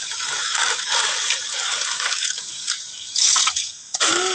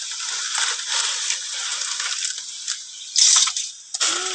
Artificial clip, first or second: first